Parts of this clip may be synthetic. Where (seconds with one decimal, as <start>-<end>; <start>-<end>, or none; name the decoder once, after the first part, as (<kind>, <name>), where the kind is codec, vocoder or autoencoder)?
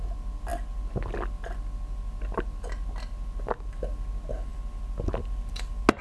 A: none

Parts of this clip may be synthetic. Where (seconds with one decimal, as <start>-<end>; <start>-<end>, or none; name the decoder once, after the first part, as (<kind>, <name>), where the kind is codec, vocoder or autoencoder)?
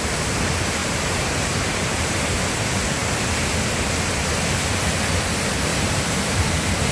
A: 0.8-2.4 (vocoder, BigVGAN v2); 5.7-6.9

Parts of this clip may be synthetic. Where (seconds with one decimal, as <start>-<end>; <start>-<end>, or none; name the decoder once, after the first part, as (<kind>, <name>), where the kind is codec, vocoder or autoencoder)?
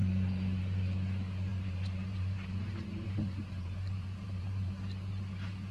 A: 1.5-4.7 (vocoder, BigVGAN v2)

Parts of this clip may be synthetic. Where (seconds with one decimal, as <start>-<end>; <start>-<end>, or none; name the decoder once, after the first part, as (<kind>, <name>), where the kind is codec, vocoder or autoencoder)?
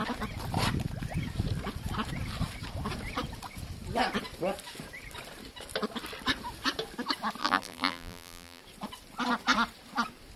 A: 7.4-8.6 (vocoder, BigVGAN v2)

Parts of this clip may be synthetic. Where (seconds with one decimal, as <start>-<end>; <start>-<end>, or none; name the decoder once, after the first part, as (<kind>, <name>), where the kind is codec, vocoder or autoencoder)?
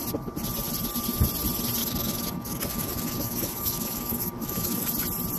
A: 1.8-4.9 (codec, DAC)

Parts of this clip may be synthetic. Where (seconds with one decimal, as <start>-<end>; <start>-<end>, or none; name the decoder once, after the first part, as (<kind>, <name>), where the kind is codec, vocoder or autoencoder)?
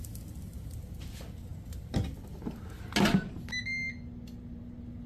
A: none